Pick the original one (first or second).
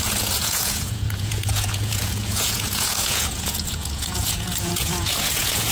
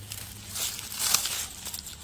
second